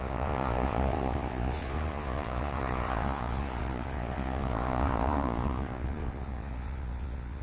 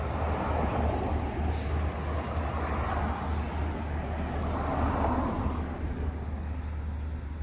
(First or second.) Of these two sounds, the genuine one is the second